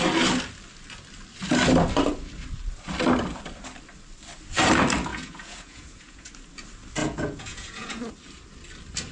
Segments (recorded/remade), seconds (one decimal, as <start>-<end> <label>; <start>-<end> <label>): 0.0-5.1 recorded; 5.1-6.3 remade; 6.3-7.0 recorded; 7.0-8.0 remade; 8.0-9.1 recorded